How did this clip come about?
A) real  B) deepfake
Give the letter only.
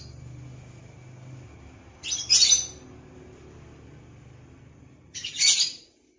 A